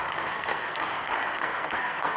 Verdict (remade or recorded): remade